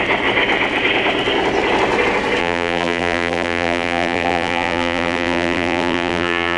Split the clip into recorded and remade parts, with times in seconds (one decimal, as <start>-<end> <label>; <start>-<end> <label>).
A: 0.0-2.4 recorded; 2.4-6.6 remade